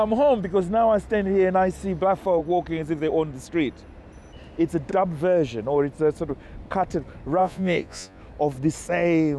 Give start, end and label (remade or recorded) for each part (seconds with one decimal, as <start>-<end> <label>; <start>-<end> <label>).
0.0-7.4 recorded; 7.4-8.2 remade; 8.2-9.4 recorded